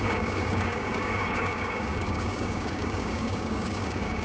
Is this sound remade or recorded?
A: remade